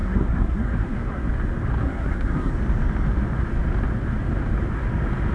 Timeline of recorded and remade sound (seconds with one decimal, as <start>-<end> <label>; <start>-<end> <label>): 0.0-1.3 remade; 1.3-1.8 recorded; 1.8-2.5 remade; 2.5-5.3 recorded